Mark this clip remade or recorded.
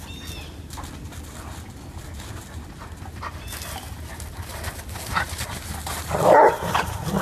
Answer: recorded